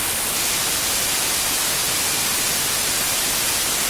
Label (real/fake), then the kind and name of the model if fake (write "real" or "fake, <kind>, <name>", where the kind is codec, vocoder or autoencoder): real